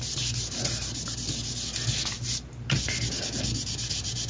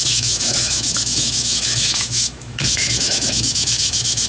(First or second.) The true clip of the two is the first